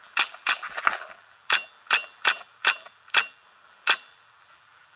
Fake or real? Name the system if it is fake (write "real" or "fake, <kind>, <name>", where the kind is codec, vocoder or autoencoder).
fake, vocoder, BigVGAN v2